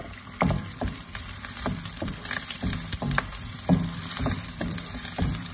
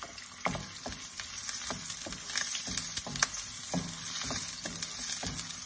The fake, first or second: first